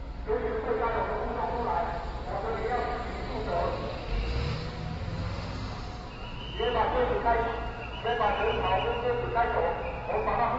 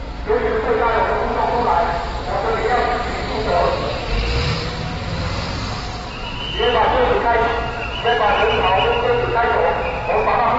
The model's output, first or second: second